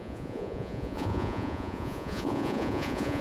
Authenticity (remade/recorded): remade